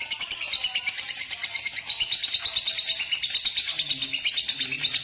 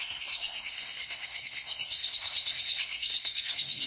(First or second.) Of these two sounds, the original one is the first